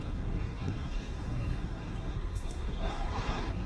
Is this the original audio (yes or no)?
no